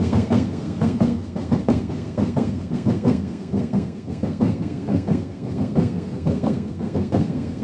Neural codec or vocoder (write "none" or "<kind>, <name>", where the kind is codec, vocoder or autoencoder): codec, SNAC